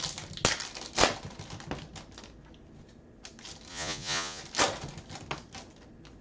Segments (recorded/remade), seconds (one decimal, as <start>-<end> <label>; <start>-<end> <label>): 0.0-3.7 recorded; 3.7-4.4 remade; 4.4-6.2 recorded